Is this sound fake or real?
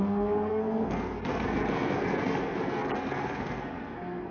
fake